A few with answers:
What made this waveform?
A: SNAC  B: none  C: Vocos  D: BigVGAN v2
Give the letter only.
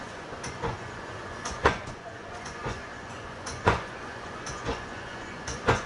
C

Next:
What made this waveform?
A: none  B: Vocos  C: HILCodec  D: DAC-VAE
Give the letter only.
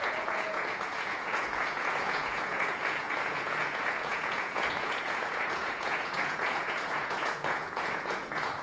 B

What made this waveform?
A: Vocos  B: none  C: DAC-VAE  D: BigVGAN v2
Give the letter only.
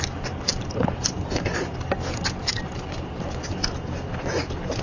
B